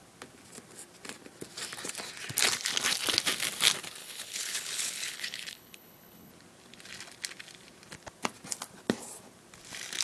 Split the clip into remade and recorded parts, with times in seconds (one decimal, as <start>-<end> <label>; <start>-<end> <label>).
0.0-4.0 recorded; 4.0-6.3 remade; 6.3-10.0 recorded